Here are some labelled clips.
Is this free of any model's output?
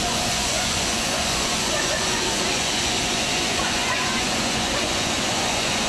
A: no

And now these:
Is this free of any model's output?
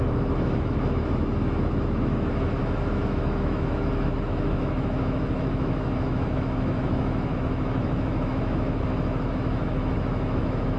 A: no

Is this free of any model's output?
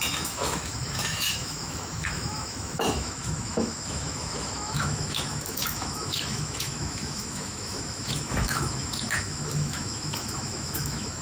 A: no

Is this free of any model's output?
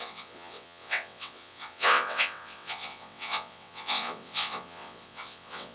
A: no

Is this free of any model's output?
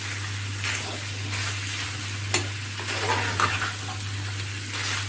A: yes